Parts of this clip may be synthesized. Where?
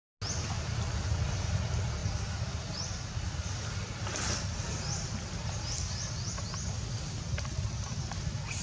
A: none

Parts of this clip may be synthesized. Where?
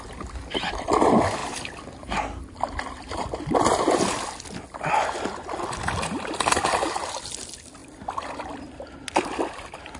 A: none